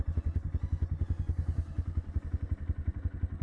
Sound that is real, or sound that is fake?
real